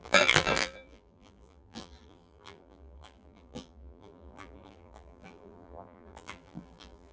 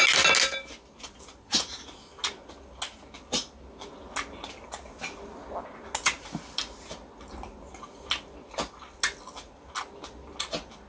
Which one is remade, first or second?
first